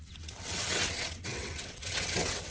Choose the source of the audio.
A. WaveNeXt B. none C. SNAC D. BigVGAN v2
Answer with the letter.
A